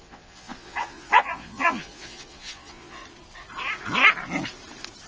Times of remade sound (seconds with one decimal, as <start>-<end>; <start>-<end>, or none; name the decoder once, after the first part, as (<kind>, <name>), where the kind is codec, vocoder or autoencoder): 0.0-3.0 (vocoder, Vocos)